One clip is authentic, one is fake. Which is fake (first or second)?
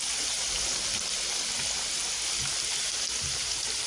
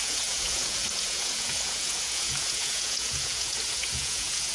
second